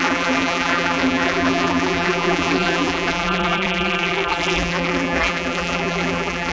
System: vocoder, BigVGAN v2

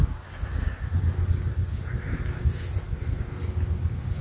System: none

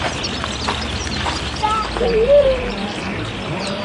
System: vocoder, BigVGAN v2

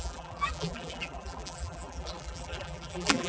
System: vocoder, BigVGAN v2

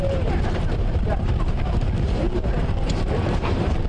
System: vocoder, BigVGAN v2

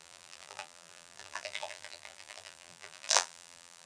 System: vocoder, BigVGAN v2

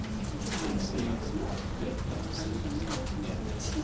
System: none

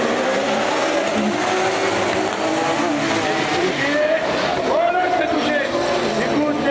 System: none